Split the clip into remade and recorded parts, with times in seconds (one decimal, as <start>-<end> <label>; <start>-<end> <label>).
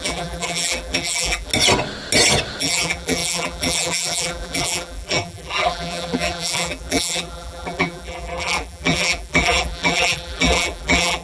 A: 0.0-1.5 remade; 1.5-2.6 recorded; 2.6-11.2 remade